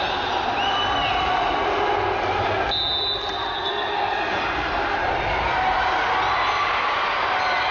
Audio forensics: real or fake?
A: real